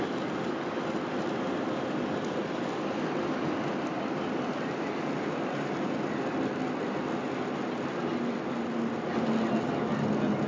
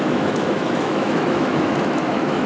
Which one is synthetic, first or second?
second